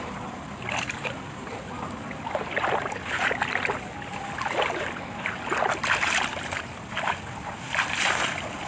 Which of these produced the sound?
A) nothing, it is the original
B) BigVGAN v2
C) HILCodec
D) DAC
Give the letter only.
A